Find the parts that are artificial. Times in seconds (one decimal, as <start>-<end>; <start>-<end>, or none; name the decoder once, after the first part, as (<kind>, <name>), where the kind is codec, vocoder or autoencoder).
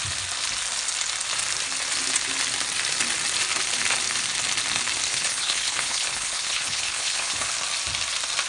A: 5.1-7.5 (codec, HILCodec)